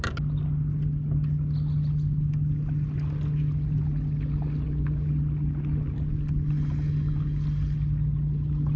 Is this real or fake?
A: real